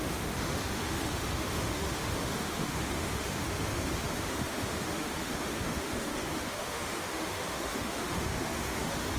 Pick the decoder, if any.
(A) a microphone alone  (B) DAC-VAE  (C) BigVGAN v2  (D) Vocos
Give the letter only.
B